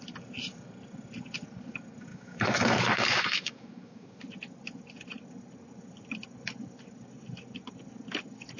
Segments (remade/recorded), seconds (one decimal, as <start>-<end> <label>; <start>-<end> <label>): 0.0-2.1 recorded; 2.1-4.2 remade; 4.2-8.6 recorded